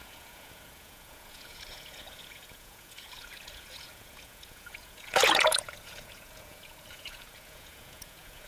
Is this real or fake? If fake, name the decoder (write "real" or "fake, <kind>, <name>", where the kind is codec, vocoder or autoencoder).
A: fake, vocoder, Vocos